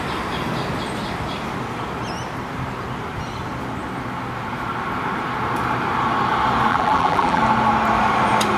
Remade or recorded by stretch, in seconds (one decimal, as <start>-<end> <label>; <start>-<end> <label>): 0.0-6.7 recorded; 6.7-7.4 remade; 7.4-8.6 recorded